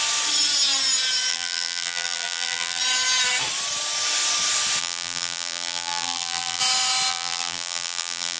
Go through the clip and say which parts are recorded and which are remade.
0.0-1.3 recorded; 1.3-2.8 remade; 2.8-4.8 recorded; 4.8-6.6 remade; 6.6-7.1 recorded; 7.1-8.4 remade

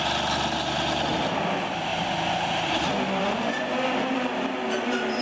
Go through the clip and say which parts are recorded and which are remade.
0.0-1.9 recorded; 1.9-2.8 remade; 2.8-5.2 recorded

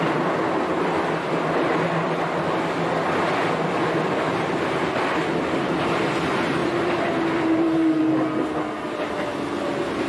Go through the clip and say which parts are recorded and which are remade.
0.0-6.6 recorded; 6.6-8.0 remade; 8.0-10.1 recorded

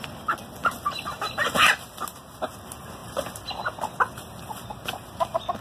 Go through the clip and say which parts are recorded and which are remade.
0.0-0.6 recorded; 0.6-1.1 remade; 1.1-5.6 recorded

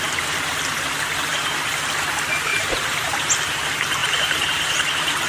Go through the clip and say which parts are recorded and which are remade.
0.0-2.5 recorded; 2.5-3.2 remade; 3.2-4.0 recorded; 4.0-5.3 remade

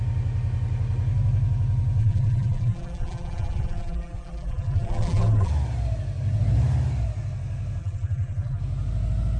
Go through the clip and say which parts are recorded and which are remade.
0.0-2.0 recorded; 2.0-5.5 remade; 5.5-7.8 recorded; 7.8-8.6 remade; 8.6-9.4 recorded